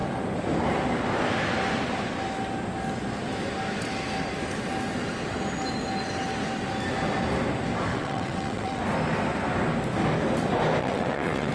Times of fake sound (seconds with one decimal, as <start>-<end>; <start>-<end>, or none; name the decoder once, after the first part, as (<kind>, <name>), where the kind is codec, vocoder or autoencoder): 7.9-8.8 (vocoder, WaveNeXt); 10.8-11.5